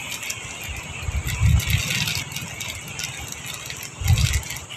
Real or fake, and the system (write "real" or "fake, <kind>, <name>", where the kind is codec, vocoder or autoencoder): real